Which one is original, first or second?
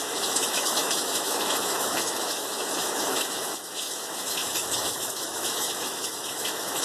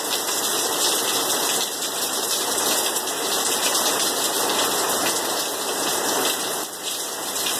second